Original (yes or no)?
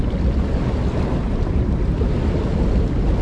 yes